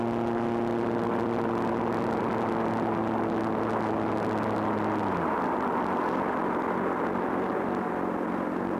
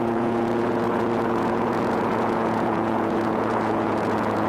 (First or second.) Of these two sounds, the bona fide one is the first